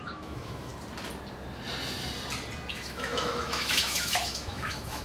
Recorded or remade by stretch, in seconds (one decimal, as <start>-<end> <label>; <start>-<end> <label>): 0.0-0.7 remade; 0.7-2.7 recorded; 2.7-5.0 remade